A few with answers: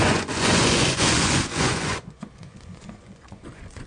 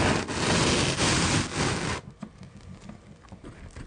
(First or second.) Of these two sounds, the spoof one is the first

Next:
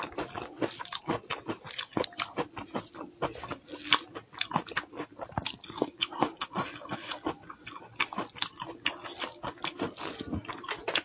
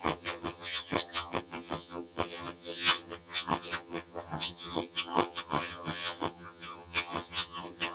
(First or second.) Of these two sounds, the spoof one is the second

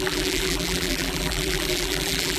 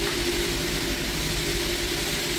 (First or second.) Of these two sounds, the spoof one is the first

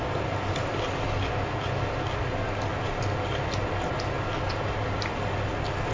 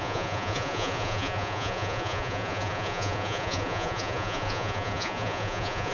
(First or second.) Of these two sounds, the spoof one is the second